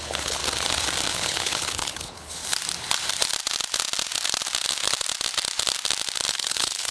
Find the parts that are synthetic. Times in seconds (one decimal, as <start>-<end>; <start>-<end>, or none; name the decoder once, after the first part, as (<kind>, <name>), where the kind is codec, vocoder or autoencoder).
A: 0.0-0.4 (codec, HILCodec); 1.1-2.4; 6.3-6.9

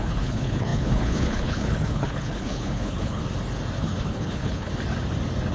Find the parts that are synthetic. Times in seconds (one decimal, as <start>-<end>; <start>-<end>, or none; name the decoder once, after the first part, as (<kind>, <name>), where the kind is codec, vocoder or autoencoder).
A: 0.0-3.2 (codec, HILCodec); 3.8-4.7

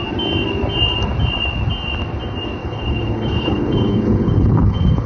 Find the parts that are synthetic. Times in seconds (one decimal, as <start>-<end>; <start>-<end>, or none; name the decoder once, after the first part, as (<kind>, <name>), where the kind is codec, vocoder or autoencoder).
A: 2.6-5.1 (codec, HILCodec)

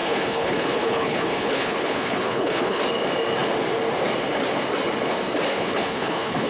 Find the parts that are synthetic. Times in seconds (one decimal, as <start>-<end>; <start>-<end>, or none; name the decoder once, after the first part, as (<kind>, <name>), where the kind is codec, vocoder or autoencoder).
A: 0.0-2.8 (codec, HILCodec); 5.5-6.5